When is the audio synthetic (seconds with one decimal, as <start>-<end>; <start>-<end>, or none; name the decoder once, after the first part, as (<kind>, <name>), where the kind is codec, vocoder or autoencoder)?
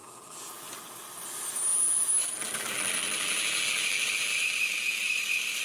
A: 0.0-0.7 (vocoder, BigVGAN v2); 1.7-5.1